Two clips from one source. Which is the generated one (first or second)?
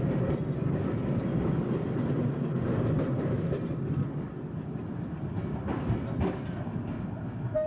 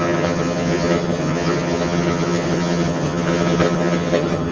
second